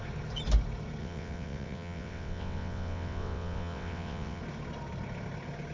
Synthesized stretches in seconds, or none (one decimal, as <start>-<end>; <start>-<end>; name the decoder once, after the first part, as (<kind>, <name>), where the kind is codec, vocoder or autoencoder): 1.0-4.4 (vocoder, WaveNeXt)